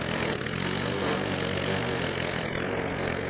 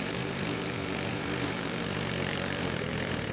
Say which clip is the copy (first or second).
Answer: second